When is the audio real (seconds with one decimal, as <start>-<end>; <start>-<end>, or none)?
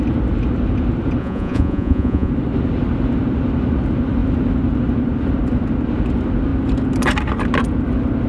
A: 0.0-1.2; 2.3-8.3